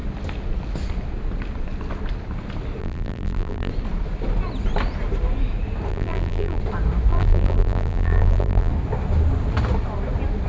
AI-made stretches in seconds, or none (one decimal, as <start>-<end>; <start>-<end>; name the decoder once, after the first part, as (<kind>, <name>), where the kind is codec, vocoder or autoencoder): 2.8-3.7 (vocoder, BigVGAN v2); 5.9-6.6; 7.1-8.7